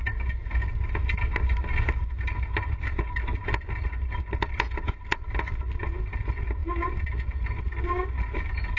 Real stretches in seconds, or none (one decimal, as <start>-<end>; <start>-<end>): 0.0-8.8